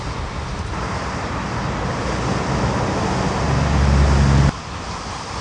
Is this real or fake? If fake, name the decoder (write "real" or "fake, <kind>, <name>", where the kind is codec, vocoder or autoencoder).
real